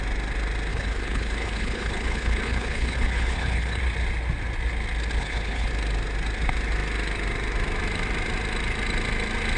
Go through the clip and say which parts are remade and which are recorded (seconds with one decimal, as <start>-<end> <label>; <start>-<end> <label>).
0.0-0.7 recorded; 0.7-3.8 remade; 3.8-5.2 recorded; 5.2-5.7 remade; 5.7-9.6 recorded

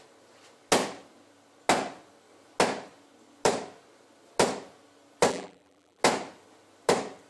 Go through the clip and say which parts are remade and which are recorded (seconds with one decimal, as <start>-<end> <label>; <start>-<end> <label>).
0.0-5.3 recorded; 5.3-6.0 remade; 6.0-7.3 recorded

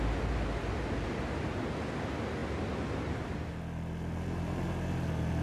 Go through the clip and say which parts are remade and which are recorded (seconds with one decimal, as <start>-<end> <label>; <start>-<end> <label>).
0.0-5.4 recorded

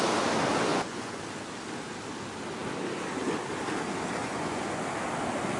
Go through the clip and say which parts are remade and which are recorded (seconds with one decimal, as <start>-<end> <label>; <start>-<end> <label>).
0.0-0.7 recorded; 0.7-1.2 remade; 1.2-4.2 recorded; 4.2-4.8 remade; 4.8-5.6 recorded

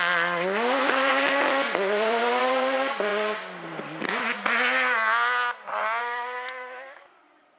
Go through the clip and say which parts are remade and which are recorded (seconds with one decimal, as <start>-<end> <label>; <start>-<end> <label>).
0.0-3.1 remade; 3.1-6.0 recorded; 6.0-7.6 remade

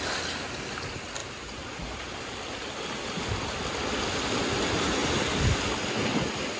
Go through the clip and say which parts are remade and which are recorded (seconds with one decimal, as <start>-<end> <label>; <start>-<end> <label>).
0.0-1.2 recorded; 1.2-2.2 remade; 2.2-6.6 recorded